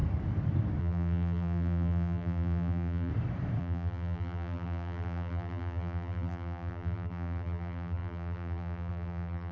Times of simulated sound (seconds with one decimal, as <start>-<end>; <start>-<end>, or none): 0.8-3.1; 3.6-9.5